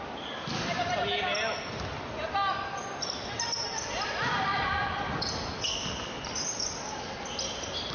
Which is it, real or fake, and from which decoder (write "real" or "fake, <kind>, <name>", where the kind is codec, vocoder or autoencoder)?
real